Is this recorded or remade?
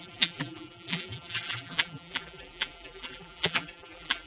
remade